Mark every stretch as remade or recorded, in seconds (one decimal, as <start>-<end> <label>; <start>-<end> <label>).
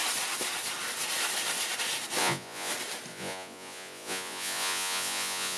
0.0-2.2 recorded; 2.2-2.7 remade; 2.7-3.1 recorded; 3.1-5.6 remade